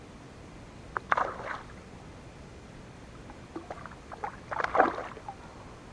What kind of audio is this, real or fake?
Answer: real